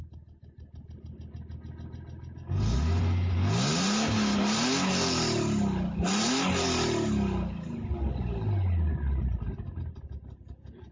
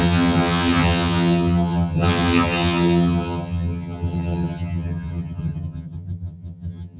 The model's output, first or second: second